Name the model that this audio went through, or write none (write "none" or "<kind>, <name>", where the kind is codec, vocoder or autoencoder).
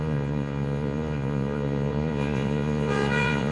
vocoder, Vocos